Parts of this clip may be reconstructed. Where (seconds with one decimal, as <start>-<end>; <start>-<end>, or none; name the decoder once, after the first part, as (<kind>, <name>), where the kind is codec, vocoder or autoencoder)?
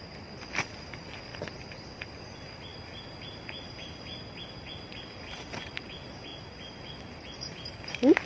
none